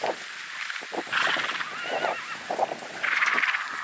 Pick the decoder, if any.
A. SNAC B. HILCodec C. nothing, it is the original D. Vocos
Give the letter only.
C